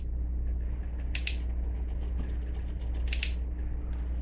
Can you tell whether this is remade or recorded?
recorded